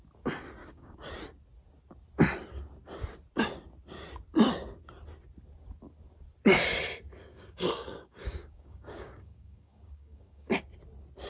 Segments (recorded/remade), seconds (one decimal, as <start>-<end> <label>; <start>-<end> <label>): 0.0-0.6 recorded; 0.6-1.1 remade; 1.1-7.3 recorded; 7.3-10.7 remade; 10.7-11.3 recorded